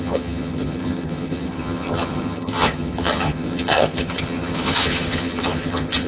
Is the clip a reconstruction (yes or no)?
yes